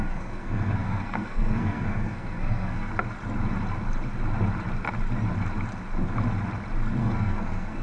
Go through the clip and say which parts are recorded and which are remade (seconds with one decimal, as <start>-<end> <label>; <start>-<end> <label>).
0.0-2.9 remade; 2.9-7.0 recorded; 7.0-7.8 remade